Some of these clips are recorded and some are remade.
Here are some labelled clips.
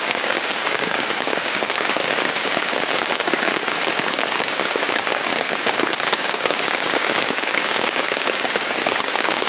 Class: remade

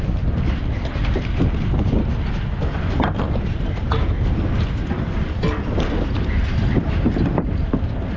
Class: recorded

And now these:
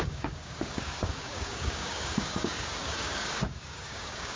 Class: remade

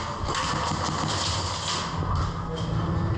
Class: recorded